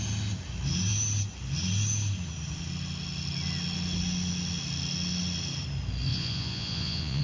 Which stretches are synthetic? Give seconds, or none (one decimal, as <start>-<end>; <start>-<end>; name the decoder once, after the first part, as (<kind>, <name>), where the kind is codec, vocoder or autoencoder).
6.1-7.2 (vocoder, Vocos)